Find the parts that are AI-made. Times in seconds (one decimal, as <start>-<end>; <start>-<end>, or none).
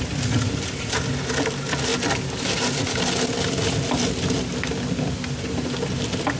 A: none